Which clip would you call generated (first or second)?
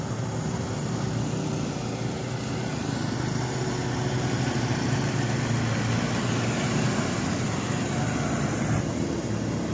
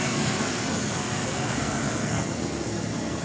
second